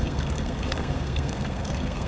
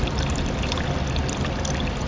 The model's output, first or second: first